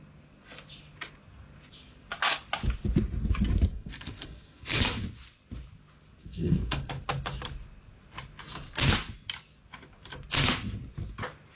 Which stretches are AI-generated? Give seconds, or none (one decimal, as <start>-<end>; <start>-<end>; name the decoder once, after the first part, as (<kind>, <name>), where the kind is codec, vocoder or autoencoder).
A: 3.7-4.8 (codec, SNAC); 6.2-6.9